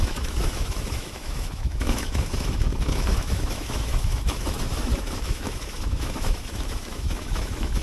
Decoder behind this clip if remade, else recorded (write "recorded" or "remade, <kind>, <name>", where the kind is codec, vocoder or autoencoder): remade, autoencoder, DAC-VAE